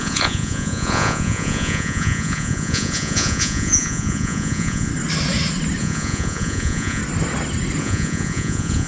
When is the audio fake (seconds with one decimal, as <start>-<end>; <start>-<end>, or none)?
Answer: 0.0-4.9; 5.8-7.0; 7.8-8.9